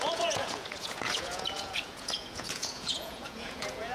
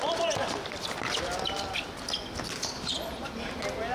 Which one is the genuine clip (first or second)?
second